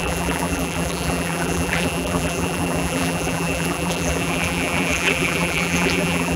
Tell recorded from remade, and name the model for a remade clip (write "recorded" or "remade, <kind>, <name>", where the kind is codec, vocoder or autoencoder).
remade, vocoder, BigVGAN v2